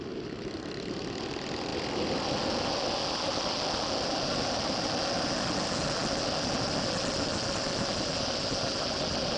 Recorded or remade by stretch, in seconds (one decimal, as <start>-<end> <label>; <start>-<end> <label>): 0.0-9.4 recorded

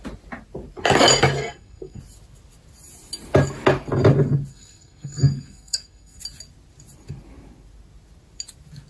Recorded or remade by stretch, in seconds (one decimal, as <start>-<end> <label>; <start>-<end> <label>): 0.0-1.4 recorded; 1.4-2.0 remade; 2.0-4.5 recorded; 4.5-6.2 remade; 6.2-8.9 recorded

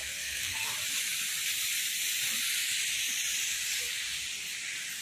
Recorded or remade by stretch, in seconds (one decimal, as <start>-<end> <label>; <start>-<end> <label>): 0.0-0.7 remade; 0.7-5.0 recorded

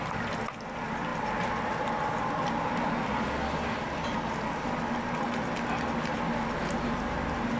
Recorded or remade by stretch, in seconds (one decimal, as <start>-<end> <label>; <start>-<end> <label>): 0.0-7.6 recorded

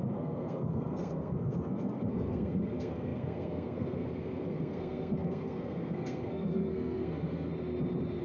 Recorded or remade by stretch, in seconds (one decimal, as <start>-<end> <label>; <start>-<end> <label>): 0.0-7.5 remade; 7.5-8.2 recorded